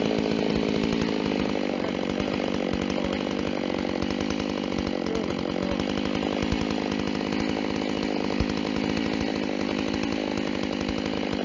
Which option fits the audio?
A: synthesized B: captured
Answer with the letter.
B